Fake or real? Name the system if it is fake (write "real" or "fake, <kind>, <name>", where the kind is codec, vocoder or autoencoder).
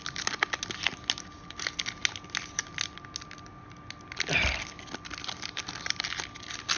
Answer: real